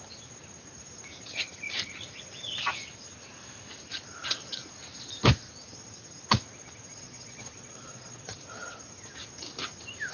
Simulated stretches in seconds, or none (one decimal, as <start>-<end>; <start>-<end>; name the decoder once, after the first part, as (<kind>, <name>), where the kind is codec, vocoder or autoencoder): 6.9-8.4 (vocoder, Vocos)